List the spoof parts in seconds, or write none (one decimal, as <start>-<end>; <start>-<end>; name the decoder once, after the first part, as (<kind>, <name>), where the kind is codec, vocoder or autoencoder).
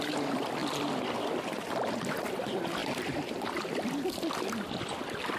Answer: 0.6-2.2 (vocoder, BigVGAN v2)